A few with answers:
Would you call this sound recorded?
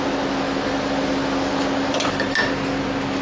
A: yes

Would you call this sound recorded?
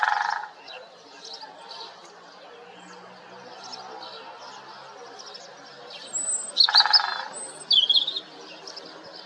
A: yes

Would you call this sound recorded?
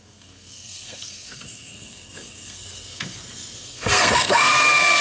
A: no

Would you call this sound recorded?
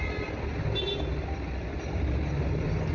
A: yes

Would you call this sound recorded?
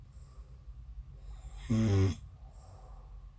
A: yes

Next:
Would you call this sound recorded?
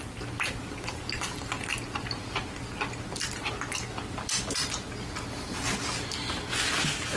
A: yes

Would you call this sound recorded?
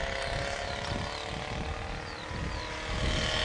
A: yes